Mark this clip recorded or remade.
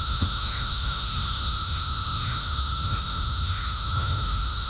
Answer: remade